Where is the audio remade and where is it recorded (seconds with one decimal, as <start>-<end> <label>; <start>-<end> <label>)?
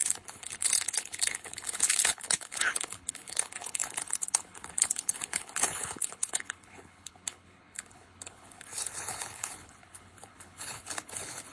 0.0-11.5 remade